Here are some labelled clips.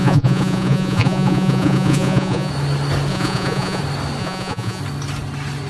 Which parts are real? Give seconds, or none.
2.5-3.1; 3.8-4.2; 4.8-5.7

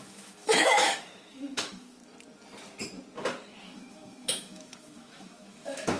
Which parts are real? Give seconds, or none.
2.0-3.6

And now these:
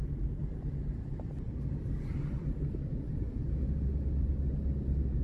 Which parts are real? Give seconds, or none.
0.0-0.4; 3.5-5.2

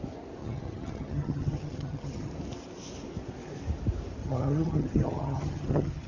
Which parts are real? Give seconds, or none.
0.0-0.4; 2.3-4.2

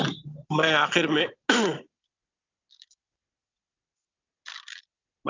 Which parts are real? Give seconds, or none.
0.0-5.3

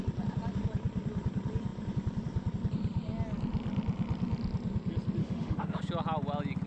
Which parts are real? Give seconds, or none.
0.0-5.2; 5.8-6.7

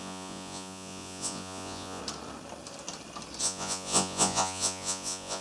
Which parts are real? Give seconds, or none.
2.0-3.4

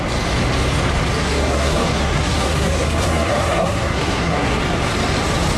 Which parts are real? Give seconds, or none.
0.0-1.2; 4.6-5.6